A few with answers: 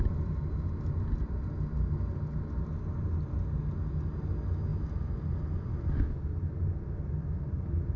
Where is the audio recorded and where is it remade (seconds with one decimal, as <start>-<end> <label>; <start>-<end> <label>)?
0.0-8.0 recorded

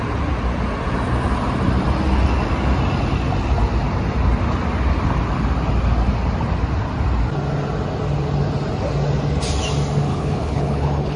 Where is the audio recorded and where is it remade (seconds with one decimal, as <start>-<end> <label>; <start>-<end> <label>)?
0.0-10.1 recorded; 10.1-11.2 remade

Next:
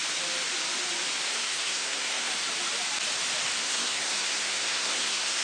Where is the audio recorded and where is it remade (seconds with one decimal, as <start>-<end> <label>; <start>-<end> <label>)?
0.0-1.3 recorded; 1.3-2.3 remade; 2.3-3.6 recorded; 3.6-5.4 remade

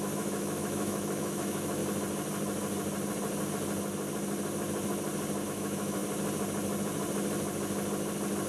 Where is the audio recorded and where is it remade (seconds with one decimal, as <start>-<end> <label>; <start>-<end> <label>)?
0.0-1.8 remade; 1.8-5.4 recorded; 5.4-6.0 remade; 6.0-8.5 recorded

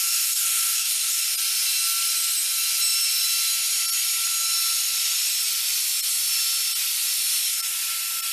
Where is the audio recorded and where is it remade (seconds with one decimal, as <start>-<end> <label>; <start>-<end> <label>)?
0.0-1.2 remade; 1.2-8.3 recorded

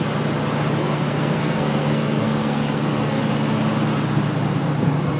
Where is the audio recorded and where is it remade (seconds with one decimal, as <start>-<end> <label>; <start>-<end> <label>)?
0.0-0.8 recorded; 0.8-3.2 remade; 3.2-5.2 recorded